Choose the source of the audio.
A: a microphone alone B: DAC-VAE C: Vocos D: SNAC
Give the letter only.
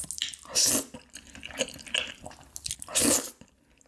A